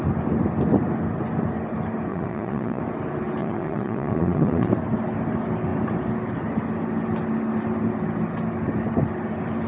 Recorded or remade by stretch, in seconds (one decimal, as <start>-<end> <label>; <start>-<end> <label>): 0.0-2.1 recorded; 2.1-2.8 remade; 2.8-3.4 recorded; 3.4-4.7 remade; 4.7-9.7 recorded

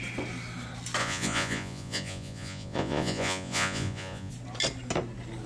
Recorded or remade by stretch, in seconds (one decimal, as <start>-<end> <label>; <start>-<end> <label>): 0.0-1.0 recorded; 1.0-4.3 remade; 4.3-5.5 recorded

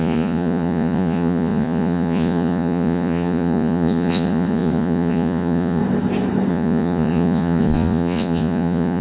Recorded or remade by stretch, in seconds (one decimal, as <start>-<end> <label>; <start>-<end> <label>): 0.0-5.8 remade; 5.8-6.5 recorded; 6.5-9.0 remade

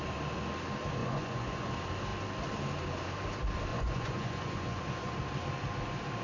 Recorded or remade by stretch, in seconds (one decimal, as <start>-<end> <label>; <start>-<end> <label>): 0.0-1.0 recorded; 1.0-1.7 remade; 1.7-3.7 recorded; 3.7-4.8 remade; 4.8-6.2 recorded

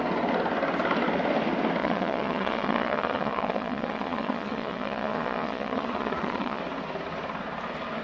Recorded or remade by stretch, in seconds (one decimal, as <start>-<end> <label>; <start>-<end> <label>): 0.0-1.8 recorded; 1.8-6.6 remade; 6.6-8.0 recorded